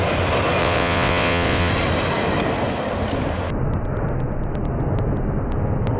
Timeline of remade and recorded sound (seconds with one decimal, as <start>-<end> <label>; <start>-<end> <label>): 0.0-0.6 recorded; 0.6-1.7 remade; 1.7-6.0 recorded